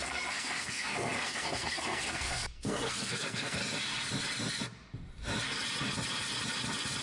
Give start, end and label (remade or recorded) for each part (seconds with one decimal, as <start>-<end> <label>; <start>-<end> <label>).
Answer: 0.0-3.6 remade; 3.6-7.0 recorded